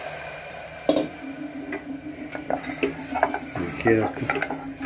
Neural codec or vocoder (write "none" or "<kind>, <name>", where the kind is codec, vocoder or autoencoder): none